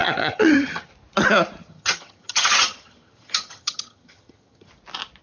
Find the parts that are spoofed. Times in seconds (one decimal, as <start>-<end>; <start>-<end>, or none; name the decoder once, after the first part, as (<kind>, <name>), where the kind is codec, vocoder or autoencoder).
0.0-0.9 (vocoder, HiFi-GAN); 1.6-4.7